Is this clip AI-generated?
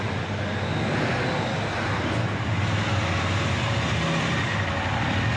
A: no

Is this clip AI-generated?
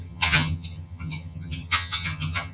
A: yes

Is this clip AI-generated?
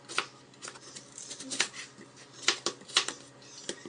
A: no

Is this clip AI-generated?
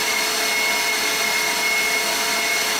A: no